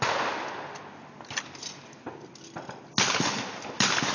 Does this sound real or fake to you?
real